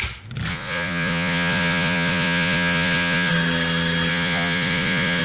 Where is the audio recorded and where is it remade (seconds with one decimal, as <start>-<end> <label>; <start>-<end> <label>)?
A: 0.0-0.5 recorded; 0.5-3.3 remade; 3.3-4.1 recorded; 4.1-5.2 remade